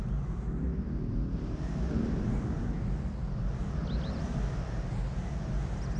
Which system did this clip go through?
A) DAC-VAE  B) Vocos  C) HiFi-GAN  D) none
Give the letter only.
D